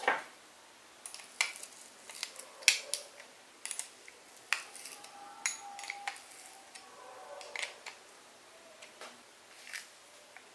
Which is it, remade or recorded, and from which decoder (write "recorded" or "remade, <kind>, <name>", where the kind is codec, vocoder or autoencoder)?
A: recorded